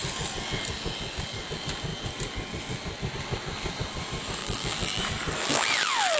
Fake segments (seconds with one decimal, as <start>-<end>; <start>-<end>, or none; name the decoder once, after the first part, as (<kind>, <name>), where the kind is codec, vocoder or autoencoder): 4.4-5.0 (vocoder, BigVGAN v2); 5.4-6.2